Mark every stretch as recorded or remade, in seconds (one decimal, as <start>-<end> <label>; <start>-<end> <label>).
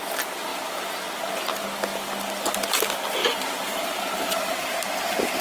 0.0-3.2 recorded; 3.2-4.7 remade; 4.7-5.4 recorded